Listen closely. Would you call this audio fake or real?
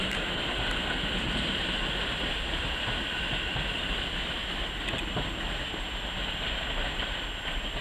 real